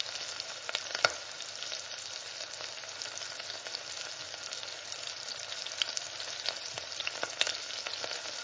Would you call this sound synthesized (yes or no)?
no